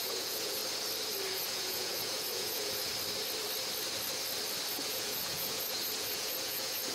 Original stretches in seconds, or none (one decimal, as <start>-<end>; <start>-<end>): 0.6-1.3; 2.9-4.7